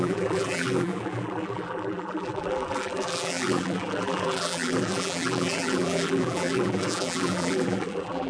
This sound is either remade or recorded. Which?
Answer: remade